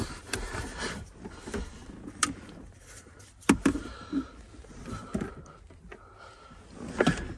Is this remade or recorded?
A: recorded